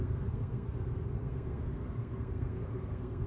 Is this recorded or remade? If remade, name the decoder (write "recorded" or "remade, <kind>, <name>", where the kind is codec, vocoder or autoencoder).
remade, codec, SNAC